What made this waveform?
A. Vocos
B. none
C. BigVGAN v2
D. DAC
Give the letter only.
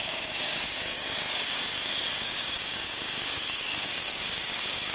D